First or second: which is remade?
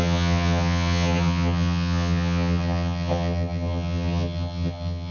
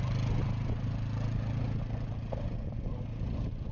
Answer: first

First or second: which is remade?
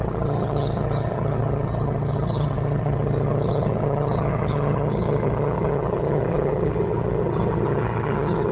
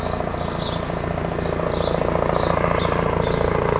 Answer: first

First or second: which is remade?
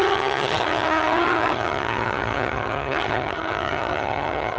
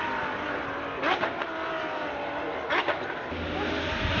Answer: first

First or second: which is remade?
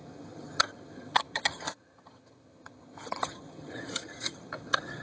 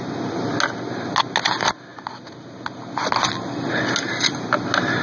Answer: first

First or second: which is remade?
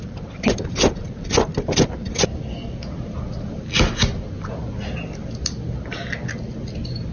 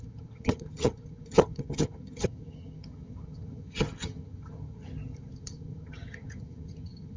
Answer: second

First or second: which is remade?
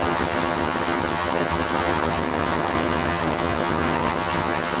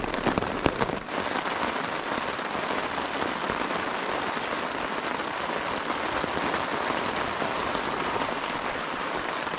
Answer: first